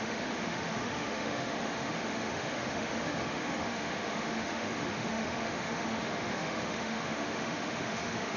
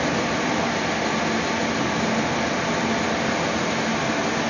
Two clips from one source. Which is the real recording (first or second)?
second